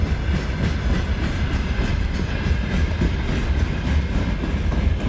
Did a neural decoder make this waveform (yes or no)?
no